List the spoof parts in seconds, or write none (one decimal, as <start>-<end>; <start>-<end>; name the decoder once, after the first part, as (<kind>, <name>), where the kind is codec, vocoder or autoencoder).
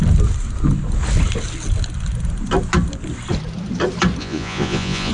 4.2-5.1 (vocoder, Vocos)